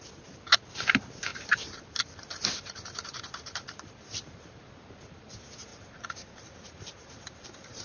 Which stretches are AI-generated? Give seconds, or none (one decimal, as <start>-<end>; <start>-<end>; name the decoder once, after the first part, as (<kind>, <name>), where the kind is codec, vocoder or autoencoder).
1.3-4.7 (vocoder, BigVGAN v2); 5.7-7.8